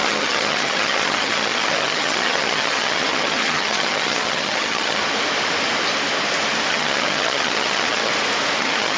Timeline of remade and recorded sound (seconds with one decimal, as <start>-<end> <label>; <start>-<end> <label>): 0.0-5.0 remade; 5.0-6.7 recorded; 6.7-8.1 remade; 8.1-8.6 recorded; 8.6-9.0 remade